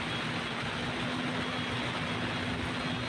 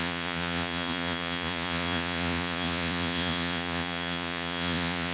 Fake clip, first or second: second